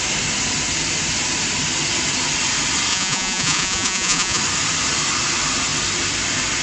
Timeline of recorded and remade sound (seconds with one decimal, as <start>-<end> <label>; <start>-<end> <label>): 0.0-2.9 recorded; 2.9-4.4 remade; 4.4-6.6 recorded